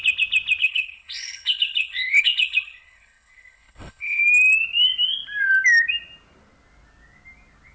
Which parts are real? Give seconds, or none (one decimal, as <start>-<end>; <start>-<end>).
0.0-0.6; 4.2-7.7